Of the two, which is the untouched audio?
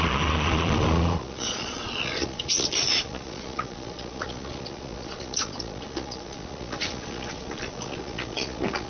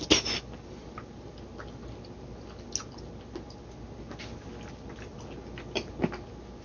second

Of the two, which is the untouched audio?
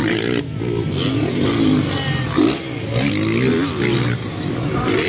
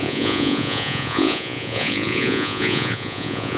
first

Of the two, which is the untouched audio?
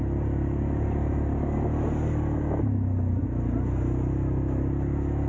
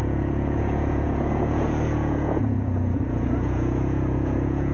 first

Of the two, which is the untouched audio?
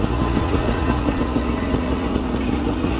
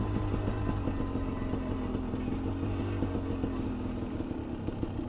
second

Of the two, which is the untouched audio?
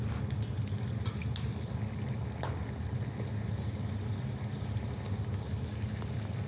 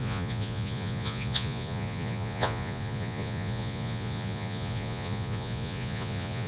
first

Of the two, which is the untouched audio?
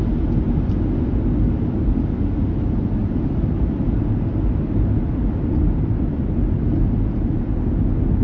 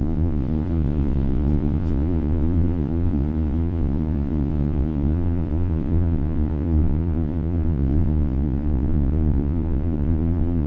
first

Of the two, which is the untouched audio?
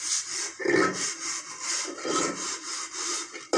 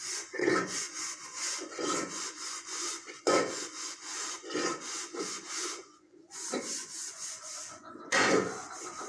first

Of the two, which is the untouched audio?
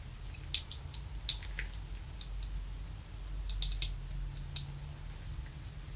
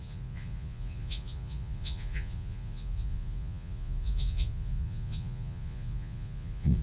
first